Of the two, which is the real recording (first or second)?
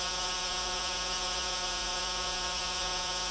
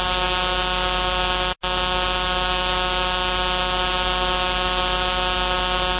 second